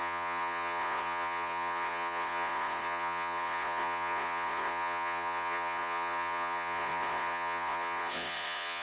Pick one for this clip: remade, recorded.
remade